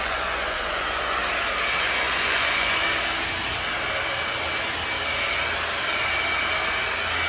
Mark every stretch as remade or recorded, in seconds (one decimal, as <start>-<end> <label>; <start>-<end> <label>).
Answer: 0.0-1.2 remade; 1.2-1.8 recorded; 1.8-2.8 remade; 2.8-7.3 recorded